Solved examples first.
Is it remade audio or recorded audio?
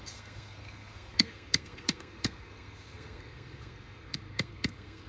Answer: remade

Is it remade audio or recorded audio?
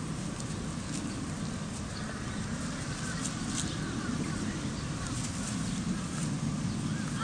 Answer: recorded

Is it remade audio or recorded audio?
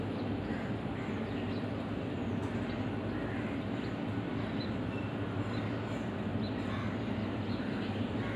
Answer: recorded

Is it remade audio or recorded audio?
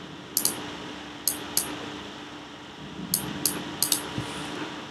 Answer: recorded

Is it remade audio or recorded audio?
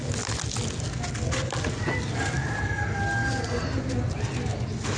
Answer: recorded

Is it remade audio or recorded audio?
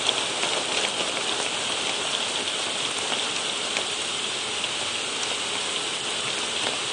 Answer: recorded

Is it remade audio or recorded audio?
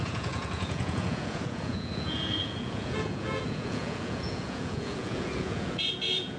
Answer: remade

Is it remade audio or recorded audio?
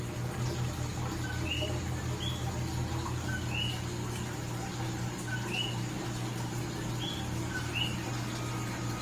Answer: recorded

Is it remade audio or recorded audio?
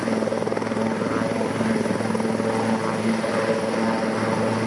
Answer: recorded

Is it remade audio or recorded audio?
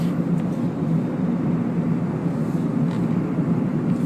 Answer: recorded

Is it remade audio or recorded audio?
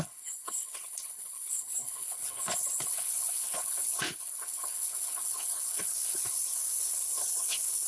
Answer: remade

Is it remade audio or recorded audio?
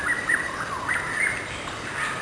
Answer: remade